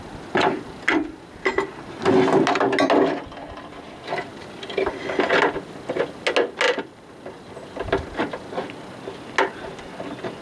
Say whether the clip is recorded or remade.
recorded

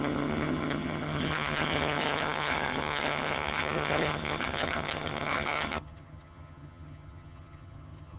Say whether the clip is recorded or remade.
remade